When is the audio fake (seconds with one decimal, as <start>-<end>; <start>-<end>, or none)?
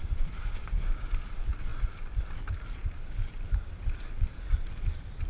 0.4-1.1